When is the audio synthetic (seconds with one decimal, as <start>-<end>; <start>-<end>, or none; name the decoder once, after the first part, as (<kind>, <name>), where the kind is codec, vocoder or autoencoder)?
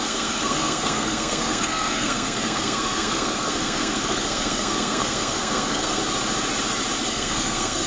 0.0-6.0 (codec, SNAC); 7.1-7.9